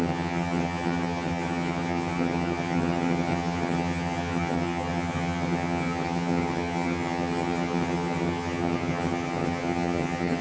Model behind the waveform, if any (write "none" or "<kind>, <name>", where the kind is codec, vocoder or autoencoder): vocoder, HiFi-GAN